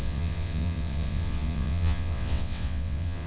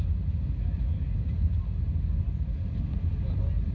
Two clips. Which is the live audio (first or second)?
second